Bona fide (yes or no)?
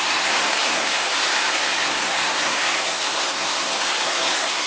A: no